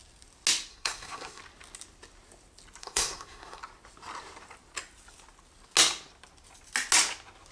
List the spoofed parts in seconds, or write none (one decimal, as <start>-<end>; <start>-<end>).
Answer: 0.7-1.4; 2.8-3.6